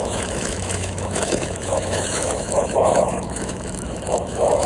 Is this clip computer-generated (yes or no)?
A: yes